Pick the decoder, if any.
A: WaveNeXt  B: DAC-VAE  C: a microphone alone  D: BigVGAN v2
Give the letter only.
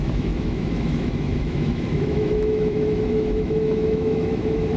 B